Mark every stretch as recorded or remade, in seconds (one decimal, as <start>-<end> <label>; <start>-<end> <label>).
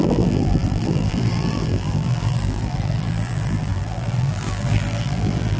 0.0-5.6 remade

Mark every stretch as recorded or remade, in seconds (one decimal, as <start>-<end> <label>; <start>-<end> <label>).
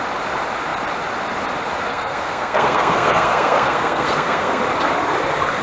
0.0-1.9 recorded; 1.9-4.6 remade; 4.6-5.6 recorded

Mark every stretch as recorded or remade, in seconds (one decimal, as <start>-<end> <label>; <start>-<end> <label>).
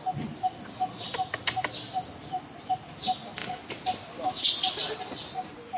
0.0-5.8 recorded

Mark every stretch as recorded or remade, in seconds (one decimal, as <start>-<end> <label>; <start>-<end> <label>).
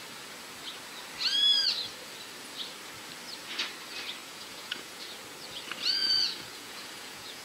0.0-4.2 recorded; 4.2-5.1 remade; 5.1-6.0 recorded; 6.0-7.4 remade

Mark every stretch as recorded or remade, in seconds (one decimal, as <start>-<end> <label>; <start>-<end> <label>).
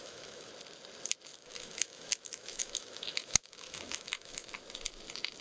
0.0-0.5 remade; 0.5-1.3 recorded; 1.3-4.5 remade; 4.5-5.4 recorded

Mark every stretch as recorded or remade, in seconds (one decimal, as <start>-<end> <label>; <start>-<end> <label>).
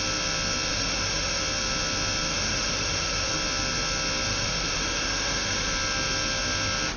0.0-0.7 recorded; 0.7-1.4 remade; 1.4-2.3 recorded; 2.3-3.3 remade; 3.3-4.3 recorded; 4.3-5.7 remade; 5.7-7.0 recorded